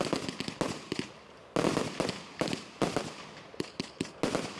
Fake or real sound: real